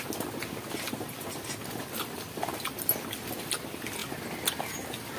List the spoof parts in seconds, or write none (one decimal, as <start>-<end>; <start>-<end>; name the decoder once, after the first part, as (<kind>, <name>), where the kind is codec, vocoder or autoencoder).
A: none